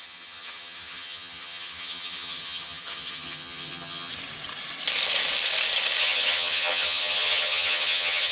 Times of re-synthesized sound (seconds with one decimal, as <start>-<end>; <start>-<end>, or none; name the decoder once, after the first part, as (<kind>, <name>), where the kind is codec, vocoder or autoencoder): 0.0-4.1 (vocoder, HiFi-GAN); 6.0-8.3